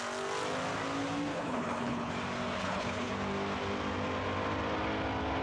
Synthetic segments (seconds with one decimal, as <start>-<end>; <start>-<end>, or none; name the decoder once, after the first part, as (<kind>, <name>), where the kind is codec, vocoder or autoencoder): 1.3-2.1 (codec, HILCodec); 2.6-3.1